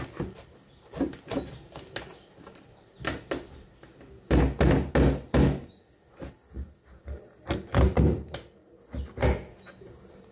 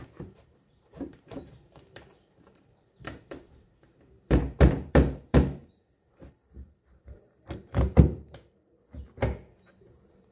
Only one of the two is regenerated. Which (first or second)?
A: second